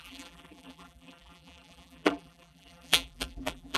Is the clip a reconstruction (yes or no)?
yes